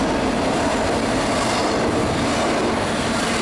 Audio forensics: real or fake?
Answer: real